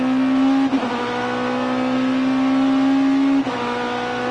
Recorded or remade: recorded